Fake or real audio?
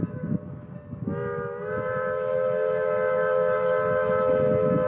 real